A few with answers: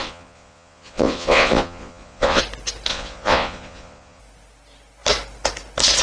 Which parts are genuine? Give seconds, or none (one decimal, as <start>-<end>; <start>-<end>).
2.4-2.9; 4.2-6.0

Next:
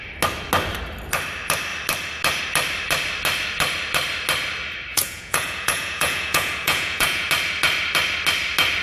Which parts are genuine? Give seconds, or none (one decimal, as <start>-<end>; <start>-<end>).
0.0-4.9; 7.3-8.8

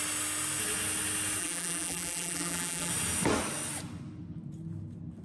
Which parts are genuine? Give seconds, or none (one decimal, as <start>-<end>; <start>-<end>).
0.0-1.4; 2.9-5.2